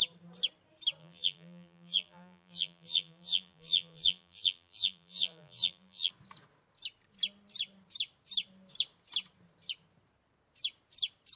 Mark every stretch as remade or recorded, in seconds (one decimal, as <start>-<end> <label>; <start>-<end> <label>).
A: 0.0-1.0 recorded; 1.0-6.1 remade; 6.1-11.4 recorded